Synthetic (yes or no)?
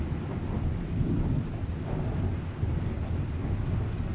no